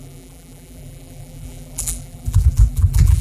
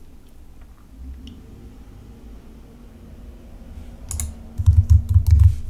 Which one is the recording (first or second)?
second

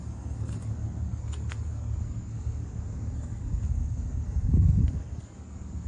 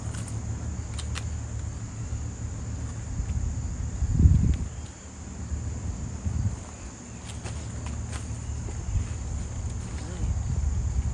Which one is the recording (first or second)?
second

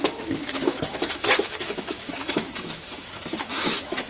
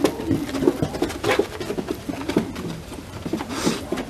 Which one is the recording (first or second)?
second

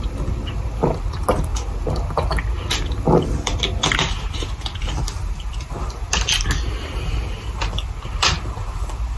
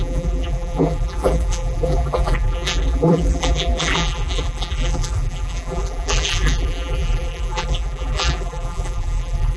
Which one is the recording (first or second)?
first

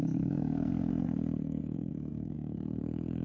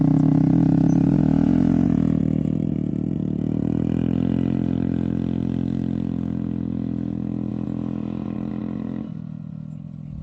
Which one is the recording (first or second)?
second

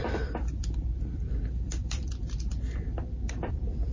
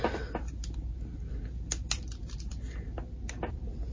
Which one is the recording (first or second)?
second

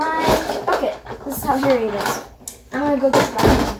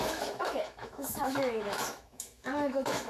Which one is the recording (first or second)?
first